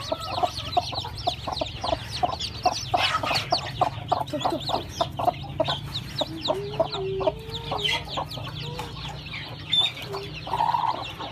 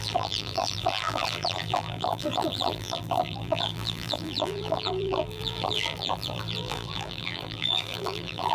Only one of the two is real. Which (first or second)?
first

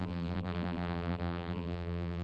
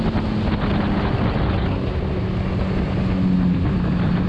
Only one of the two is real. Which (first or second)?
second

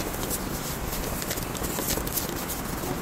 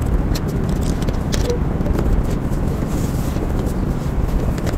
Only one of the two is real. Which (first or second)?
second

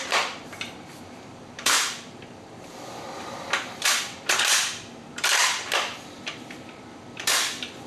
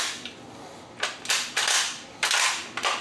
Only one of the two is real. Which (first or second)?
second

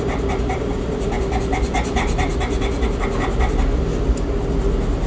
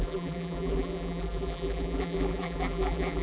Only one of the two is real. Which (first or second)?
first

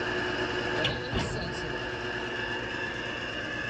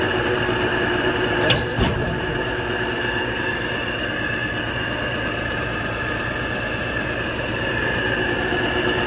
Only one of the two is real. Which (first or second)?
first